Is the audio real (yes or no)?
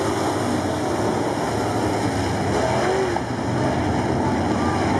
yes